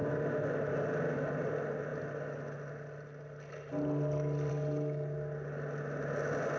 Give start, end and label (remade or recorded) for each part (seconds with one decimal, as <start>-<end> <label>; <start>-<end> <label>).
0.0-6.6 recorded